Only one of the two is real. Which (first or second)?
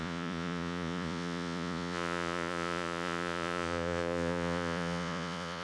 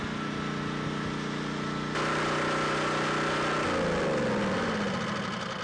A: second